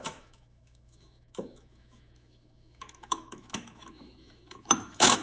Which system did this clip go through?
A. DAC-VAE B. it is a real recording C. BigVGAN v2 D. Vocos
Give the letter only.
A